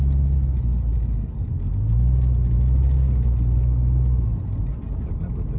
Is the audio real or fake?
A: real